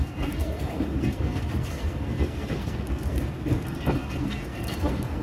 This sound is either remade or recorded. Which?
remade